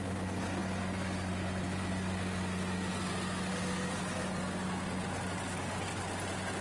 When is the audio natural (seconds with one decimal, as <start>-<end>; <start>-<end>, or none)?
0.0-6.6